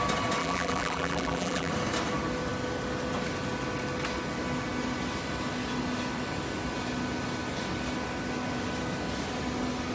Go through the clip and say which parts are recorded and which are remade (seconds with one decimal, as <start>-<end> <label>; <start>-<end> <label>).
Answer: 0.0-0.4 recorded; 0.4-1.7 remade; 1.7-9.9 recorded